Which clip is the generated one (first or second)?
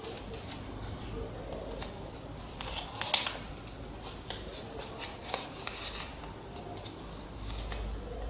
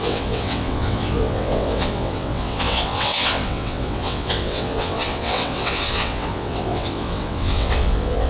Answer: second